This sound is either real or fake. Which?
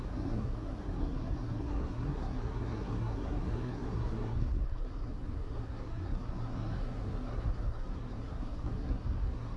fake